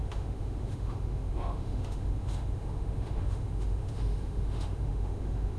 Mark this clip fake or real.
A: fake